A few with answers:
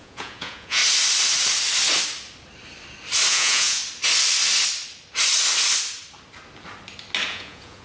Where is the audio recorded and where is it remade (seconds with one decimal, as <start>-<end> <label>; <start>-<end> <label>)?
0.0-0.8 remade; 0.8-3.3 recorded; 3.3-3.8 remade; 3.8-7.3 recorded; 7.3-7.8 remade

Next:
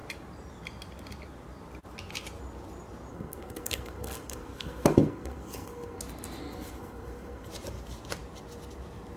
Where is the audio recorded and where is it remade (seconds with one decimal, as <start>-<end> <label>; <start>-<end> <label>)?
0.0-3.1 recorded; 3.1-6.0 remade; 6.0-6.4 recorded; 6.4-7.5 remade; 7.5-9.2 recorded

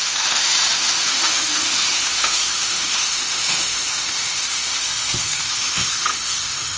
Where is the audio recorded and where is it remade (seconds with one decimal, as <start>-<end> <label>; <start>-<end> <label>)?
0.0-6.8 remade